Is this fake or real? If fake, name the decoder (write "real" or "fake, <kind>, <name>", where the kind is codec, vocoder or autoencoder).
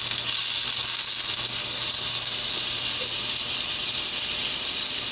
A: real